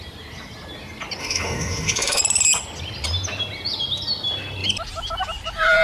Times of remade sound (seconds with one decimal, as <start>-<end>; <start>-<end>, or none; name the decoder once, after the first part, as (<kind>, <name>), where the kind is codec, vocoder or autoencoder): 1.2-2.2 (autoencoder, DAC-VAE)